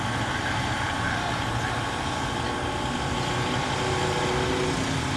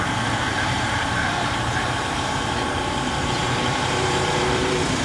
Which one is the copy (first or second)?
second